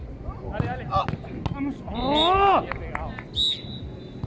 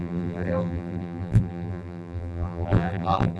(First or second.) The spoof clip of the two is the second